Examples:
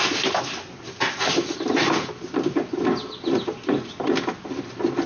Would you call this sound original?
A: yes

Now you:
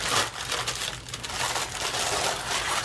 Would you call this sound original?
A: yes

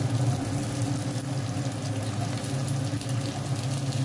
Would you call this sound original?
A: yes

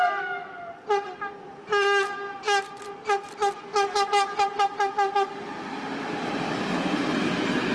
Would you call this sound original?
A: yes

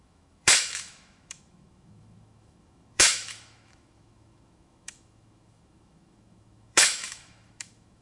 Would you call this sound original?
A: no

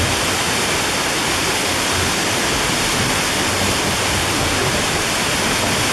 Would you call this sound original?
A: yes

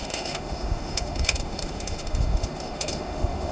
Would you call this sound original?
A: no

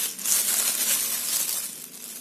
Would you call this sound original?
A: yes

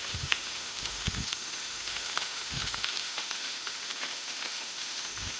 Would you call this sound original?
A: no